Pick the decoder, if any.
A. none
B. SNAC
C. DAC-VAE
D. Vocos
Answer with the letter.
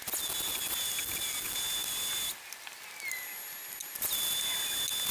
A